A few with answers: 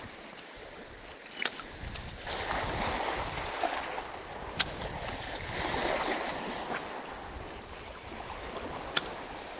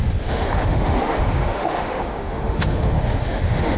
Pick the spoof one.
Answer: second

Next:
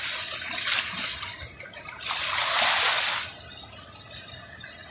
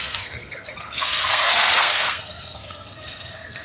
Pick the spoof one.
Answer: second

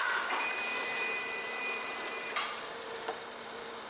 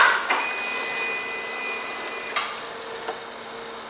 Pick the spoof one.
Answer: first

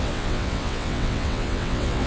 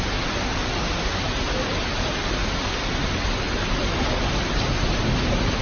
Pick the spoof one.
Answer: first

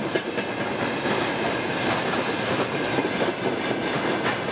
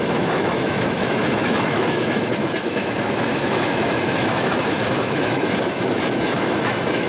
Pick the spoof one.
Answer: second